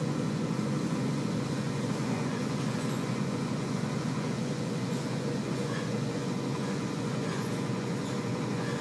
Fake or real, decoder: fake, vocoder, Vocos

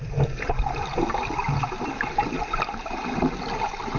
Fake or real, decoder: real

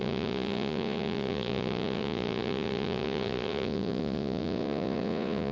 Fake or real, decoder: fake, vocoder, Vocos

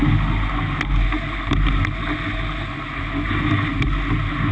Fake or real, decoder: real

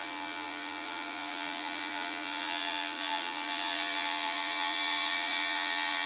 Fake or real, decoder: fake, vocoder, BigVGAN v2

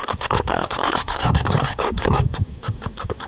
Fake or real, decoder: fake, codec, SNAC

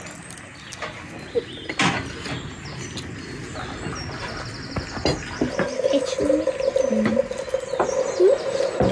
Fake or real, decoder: real